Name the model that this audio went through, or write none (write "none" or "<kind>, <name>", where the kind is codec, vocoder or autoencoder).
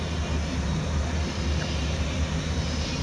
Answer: none